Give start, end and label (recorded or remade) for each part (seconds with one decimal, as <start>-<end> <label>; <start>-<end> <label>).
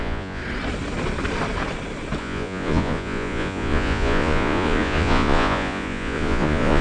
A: 0.0-0.4 remade; 0.4-2.2 recorded; 2.2-6.8 remade